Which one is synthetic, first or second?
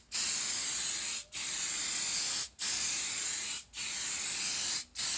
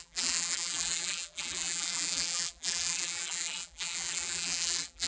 second